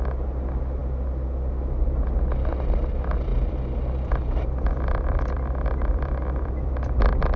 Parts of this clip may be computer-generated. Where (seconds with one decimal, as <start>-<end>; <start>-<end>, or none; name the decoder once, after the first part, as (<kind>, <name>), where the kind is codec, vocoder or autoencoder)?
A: 3.3-7.0 (vocoder, BigVGAN v2)